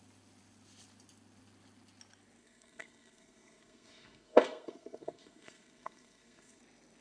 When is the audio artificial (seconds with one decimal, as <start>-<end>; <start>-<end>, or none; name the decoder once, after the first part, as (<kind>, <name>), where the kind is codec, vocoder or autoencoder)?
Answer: 2.4-6.6 (codec, SNAC)